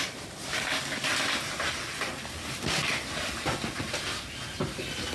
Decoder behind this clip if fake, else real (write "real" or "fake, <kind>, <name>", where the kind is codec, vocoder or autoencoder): real